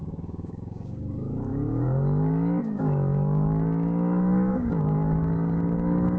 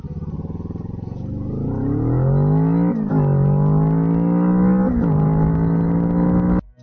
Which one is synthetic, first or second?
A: first